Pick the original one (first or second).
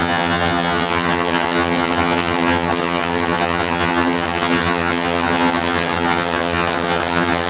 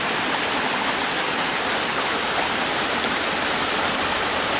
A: second